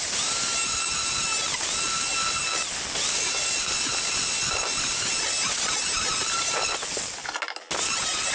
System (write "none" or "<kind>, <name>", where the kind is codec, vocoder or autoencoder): none